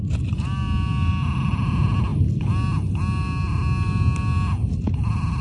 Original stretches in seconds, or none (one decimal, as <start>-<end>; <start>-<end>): 0.0-5.4